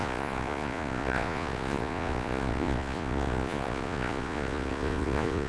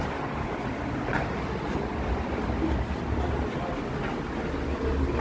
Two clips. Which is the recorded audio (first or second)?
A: second